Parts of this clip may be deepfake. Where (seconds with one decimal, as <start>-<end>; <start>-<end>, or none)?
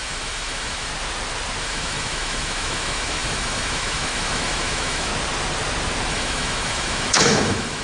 0.0-0.9; 1.6-5.1; 6.1-7.8